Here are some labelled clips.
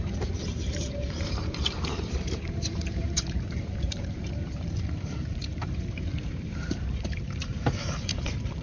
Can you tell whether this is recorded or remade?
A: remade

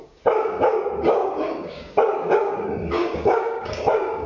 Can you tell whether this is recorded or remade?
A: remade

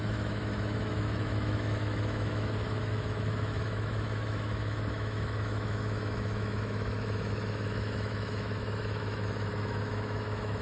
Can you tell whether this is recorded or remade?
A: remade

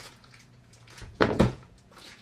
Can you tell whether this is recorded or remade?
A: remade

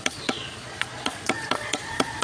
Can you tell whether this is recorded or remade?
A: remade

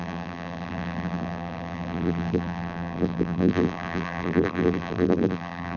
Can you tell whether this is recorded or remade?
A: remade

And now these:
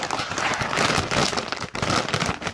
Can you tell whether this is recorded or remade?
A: recorded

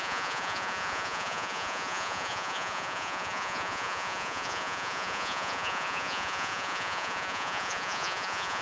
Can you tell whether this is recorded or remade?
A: remade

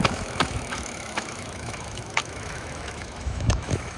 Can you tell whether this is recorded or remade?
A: remade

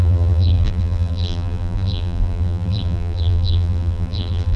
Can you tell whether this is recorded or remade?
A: remade